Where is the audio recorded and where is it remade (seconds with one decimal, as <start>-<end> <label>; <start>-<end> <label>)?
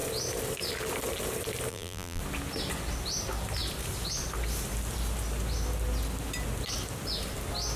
0.0-1.7 recorded; 1.7-2.2 remade; 2.2-7.8 recorded